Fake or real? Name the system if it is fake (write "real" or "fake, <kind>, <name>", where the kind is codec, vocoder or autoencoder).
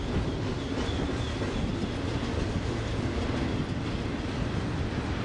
real